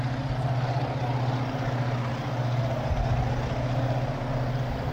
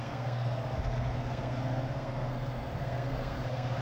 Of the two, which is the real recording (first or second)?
first